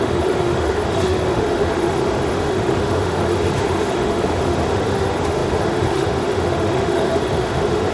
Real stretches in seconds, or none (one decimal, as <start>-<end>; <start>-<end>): none